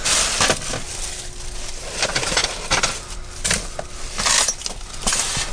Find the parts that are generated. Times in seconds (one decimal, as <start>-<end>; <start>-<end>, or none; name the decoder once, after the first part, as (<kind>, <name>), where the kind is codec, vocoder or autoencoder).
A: none